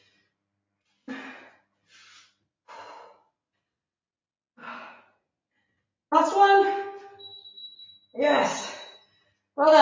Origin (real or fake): real